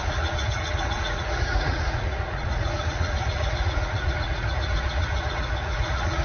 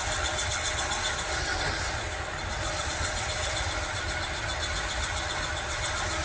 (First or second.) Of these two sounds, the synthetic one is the first